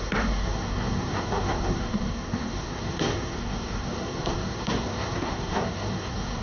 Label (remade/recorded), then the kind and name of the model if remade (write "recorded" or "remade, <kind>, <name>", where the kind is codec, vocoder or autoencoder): remade, codec, SNAC